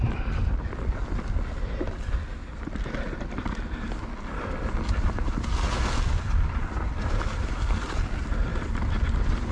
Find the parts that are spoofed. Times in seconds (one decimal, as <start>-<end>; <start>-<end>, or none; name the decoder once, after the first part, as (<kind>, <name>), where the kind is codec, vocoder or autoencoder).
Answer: none